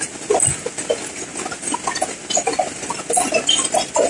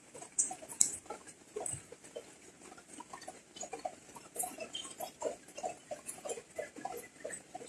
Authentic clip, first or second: first